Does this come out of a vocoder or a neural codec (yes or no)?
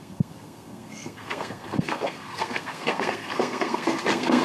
yes